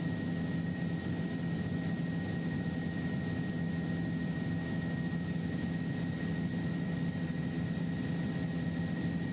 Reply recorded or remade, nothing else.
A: recorded